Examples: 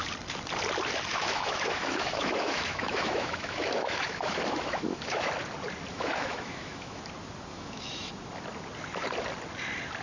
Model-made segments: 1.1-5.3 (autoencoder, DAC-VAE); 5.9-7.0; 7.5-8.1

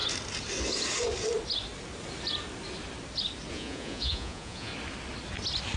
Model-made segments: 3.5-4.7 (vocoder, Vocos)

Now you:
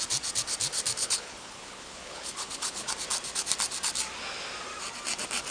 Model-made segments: 1.0-2.9 (codec, HILCodec)

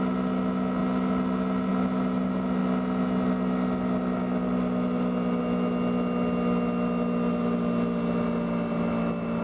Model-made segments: none

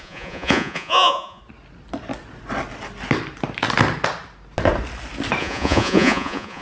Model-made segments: 0.0-1.4 (vocoder, Vocos); 5.4-6.6

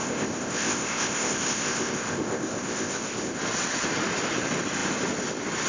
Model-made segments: 0.0-3.4 (codec, ZipCodec)

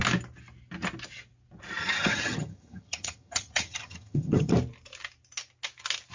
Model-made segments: 1.8-4.5 (vocoder, HiFi-GAN)